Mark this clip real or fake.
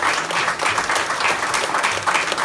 real